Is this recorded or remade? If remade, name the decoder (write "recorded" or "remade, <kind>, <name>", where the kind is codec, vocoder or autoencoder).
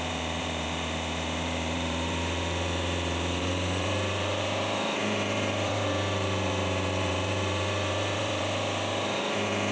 remade, vocoder, BigVGAN v2